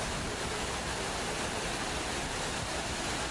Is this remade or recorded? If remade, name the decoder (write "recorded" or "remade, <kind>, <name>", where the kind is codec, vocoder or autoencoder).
recorded